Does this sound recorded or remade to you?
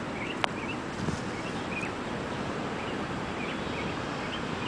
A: recorded